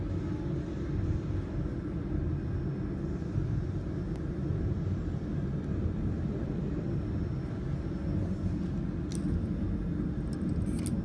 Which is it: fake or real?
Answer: real